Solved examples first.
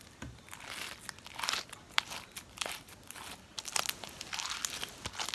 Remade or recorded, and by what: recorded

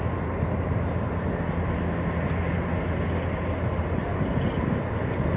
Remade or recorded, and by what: recorded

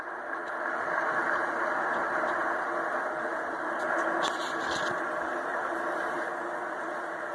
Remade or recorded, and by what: recorded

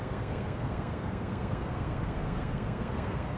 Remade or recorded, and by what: remade, codec, SNAC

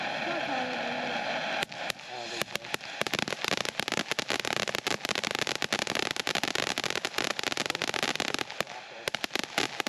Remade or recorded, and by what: recorded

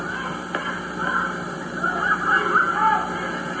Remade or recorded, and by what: recorded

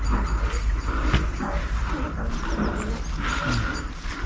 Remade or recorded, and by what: recorded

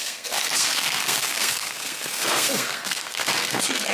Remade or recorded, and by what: remade, codec, SNAC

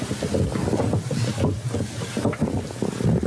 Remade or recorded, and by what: recorded